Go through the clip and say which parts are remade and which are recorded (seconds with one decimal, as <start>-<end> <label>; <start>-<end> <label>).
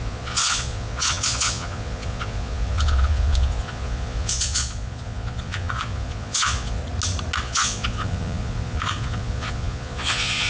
0.0-6.8 remade; 6.8-7.4 recorded; 7.4-10.5 remade